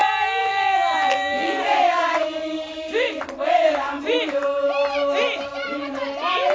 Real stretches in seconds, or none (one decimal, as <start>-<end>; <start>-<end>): 0.0-0.4; 1.5-6.5